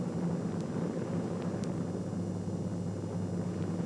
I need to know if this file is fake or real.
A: real